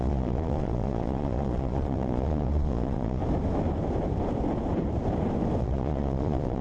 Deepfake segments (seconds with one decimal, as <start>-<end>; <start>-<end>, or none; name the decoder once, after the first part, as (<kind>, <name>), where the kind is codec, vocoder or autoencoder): 0.0-3.2 (vocoder, Vocos); 5.6-6.6